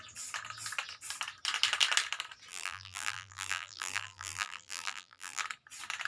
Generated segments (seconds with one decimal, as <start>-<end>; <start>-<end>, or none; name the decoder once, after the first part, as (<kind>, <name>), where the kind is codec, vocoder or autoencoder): 2.5-5.4 (vocoder, BigVGAN v2)